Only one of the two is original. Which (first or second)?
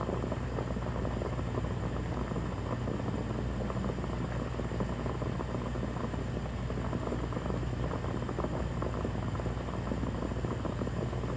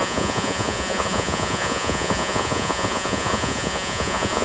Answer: first